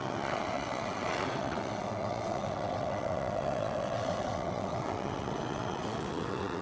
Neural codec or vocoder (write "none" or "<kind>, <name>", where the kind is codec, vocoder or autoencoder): vocoder, WaveNeXt